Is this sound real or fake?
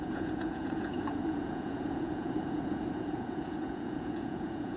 fake